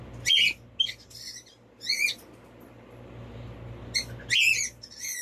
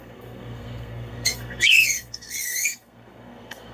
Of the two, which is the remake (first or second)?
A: second